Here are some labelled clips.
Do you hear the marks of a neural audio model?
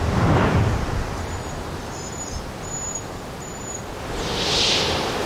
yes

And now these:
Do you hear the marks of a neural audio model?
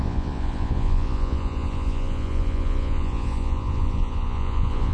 yes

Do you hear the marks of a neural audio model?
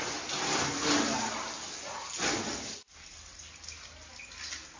no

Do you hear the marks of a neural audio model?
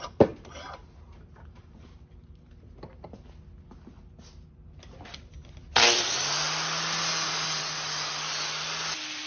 no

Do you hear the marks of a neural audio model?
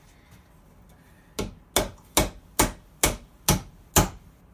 no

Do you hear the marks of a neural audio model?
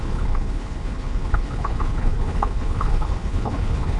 yes